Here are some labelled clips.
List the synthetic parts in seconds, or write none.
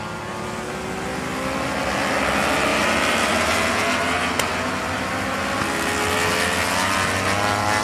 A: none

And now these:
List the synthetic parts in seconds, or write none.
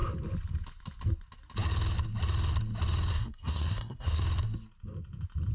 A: 3.1-4.2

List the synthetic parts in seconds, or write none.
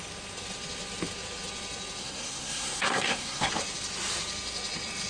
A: 2.0-3.5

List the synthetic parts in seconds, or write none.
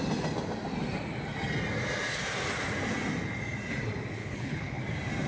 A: 4.2-4.8